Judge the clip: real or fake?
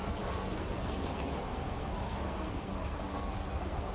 fake